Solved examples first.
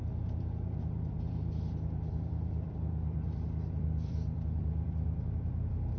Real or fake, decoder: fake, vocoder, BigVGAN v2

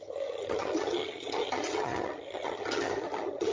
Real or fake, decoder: fake, vocoder, HiFi-GAN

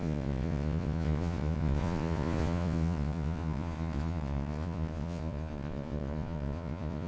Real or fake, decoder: fake, vocoder, Vocos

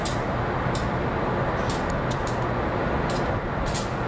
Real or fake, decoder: real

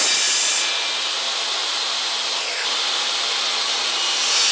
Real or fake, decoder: real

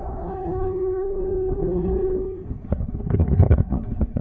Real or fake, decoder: fake, codec, SNAC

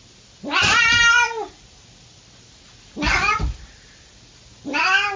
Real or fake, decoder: real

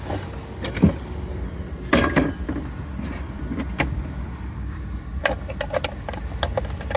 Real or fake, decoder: real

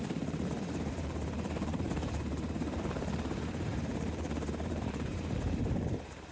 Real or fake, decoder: fake, vocoder, BigVGAN v2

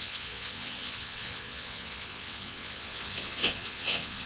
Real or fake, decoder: fake, vocoder, WaveNeXt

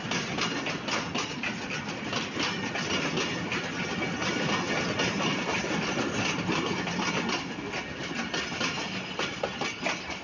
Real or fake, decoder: real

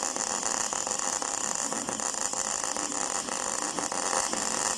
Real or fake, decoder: real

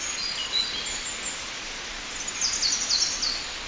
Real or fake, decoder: real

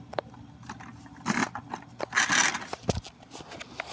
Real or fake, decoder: real